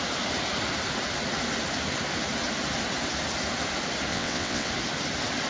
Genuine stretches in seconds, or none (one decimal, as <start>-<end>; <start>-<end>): 0.0-4.1; 4.7-5.5